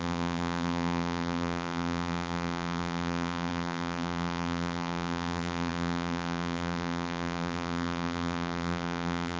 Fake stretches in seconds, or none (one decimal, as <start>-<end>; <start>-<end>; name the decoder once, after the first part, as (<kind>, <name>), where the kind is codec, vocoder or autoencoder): 0.0-9.4 (vocoder, BigVGAN v2)